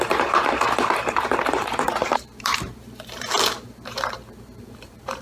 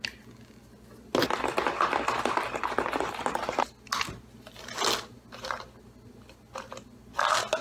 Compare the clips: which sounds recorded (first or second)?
second